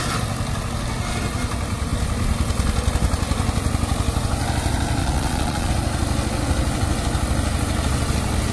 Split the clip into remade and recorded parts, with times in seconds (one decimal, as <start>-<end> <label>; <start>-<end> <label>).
0.0-5.0 recorded; 5.0-5.7 remade; 5.7-8.5 recorded